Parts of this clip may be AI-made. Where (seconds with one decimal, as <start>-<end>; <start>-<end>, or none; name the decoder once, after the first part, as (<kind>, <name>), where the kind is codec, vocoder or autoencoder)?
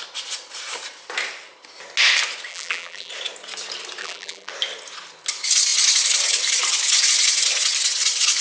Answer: 2.5-3.1 (vocoder, BigVGAN v2); 4.0-4.5